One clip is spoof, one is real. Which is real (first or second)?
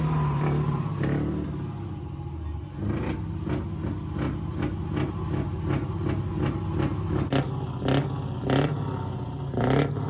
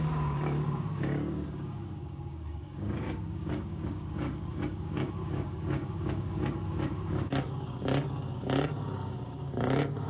first